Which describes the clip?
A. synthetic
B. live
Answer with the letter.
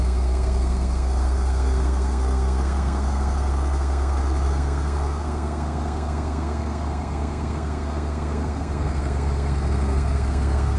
A